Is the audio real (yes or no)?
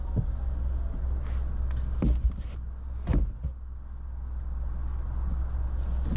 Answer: yes